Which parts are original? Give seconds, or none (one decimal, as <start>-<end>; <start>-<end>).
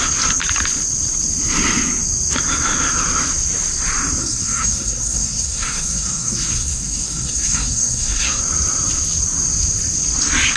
0.0-4.2; 8.4-10.6